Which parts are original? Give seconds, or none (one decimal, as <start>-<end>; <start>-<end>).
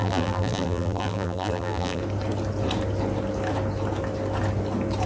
2.0-5.1